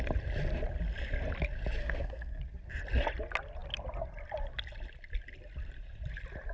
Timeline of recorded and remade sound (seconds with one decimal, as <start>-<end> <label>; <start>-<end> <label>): 0.0-1.8 recorded; 1.8-2.4 remade; 2.4-6.5 recorded